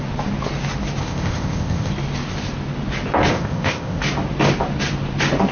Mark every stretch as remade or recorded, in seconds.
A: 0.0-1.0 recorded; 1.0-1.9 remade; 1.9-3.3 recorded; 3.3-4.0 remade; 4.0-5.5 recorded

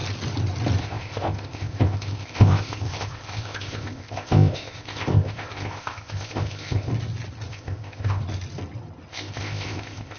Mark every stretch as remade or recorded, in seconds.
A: 0.0-0.8 recorded; 0.8-6.9 remade; 6.9-7.5 recorded; 7.5-8.2 remade; 8.2-9.1 recorded; 9.1-10.2 remade

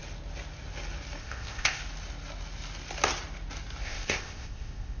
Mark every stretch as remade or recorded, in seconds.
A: 0.0-1.2 recorded; 1.2-1.8 remade; 1.8-3.8 recorded; 3.8-5.0 remade

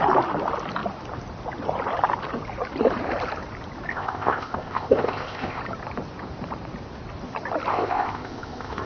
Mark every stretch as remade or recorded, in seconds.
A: 0.0-3.9 recorded; 3.9-5.6 remade; 5.6-7.7 recorded; 7.7-8.9 remade

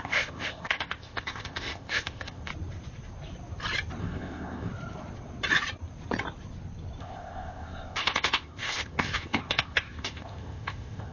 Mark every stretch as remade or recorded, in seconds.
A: 0.0-2.5 remade; 2.5-4.0 recorded; 4.0-4.7 remade; 4.7-7.0 recorded; 7.0-11.1 remade

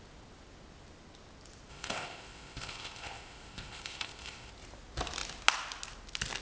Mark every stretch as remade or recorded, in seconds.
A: 0.0-1.7 recorded; 1.7-4.5 remade; 4.5-6.4 recorded

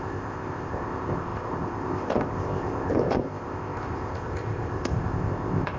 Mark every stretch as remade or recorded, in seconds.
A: 0.0-5.8 remade

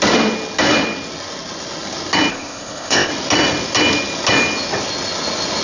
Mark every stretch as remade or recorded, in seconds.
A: 0.0-2.3 recorded; 2.3-3.1 remade; 3.1-5.6 recorded